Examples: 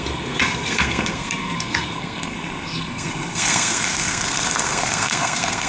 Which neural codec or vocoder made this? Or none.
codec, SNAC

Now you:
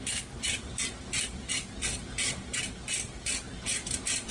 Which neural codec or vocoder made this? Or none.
none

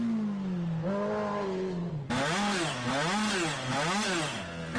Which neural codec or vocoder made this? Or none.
none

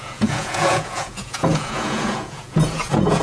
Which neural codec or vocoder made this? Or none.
vocoder, Vocos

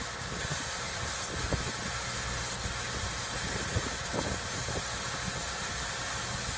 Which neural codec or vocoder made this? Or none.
none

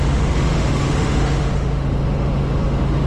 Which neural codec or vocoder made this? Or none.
autoencoder, DAC-VAE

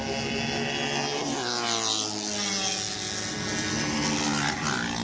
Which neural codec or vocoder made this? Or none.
none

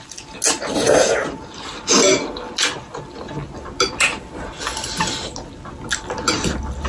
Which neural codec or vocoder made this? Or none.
none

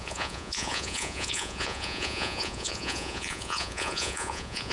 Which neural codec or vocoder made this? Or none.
vocoder, Vocos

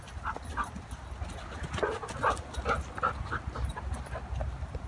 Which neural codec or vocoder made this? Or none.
none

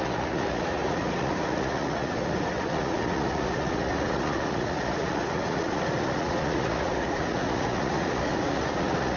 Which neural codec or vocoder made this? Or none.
vocoder, Vocos